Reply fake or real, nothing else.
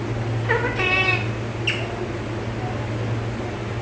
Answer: real